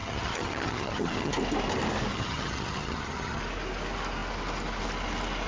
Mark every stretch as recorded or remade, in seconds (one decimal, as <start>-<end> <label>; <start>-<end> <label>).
0.0-1.3 remade; 1.3-2.1 recorded; 2.1-3.4 remade; 3.4-5.5 recorded